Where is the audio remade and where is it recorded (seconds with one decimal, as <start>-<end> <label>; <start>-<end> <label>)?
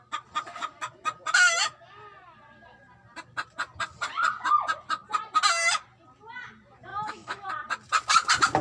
0.0-6.9 recorded; 6.9-7.5 remade; 7.5-8.6 recorded